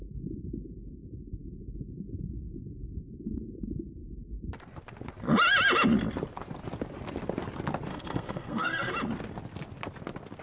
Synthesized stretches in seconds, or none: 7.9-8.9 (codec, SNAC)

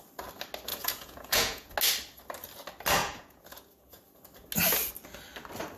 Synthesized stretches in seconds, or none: 0.7-1.7 (vocoder, Vocos); 3.0-4.2

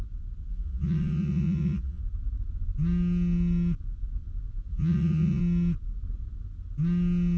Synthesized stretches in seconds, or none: 0.5-2.0 (vocoder, Vocos); 4.7-5.4

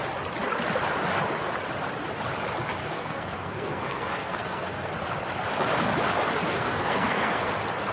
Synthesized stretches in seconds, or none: 2.8-4.9 (codec, SNAC); 6.5-7.5

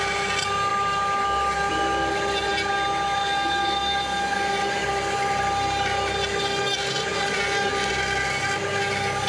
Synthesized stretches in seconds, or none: none